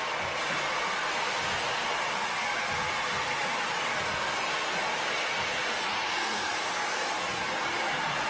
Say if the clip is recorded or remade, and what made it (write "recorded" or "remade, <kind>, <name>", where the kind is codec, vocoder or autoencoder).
recorded